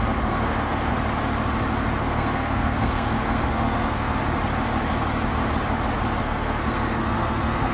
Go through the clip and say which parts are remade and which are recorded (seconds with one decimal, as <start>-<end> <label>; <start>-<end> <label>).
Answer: 0.0-0.9 remade; 0.9-2.0 recorded; 2.0-4.2 remade; 4.2-6.2 recorded; 6.2-7.7 remade